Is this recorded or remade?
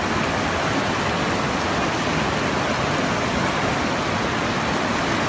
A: recorded